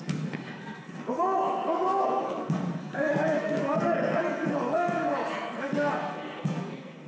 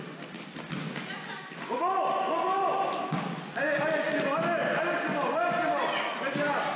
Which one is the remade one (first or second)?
first